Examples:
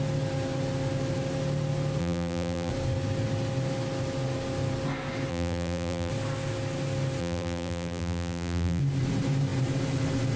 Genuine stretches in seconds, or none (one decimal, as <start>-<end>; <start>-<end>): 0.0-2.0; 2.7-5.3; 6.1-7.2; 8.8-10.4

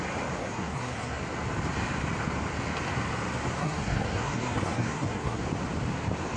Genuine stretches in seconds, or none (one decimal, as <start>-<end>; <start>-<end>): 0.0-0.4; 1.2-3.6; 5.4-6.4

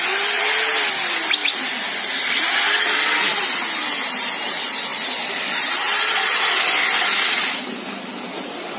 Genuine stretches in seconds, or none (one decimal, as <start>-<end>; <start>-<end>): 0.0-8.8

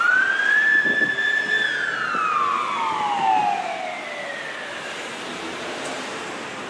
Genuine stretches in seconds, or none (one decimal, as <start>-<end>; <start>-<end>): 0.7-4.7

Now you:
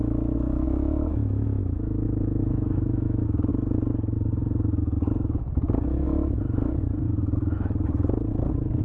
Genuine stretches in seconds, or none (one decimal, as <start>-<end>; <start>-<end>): 3.5-8.8

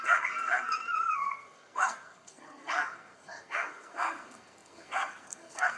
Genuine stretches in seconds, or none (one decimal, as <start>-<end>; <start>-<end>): none